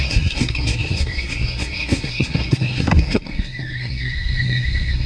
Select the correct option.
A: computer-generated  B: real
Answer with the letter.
A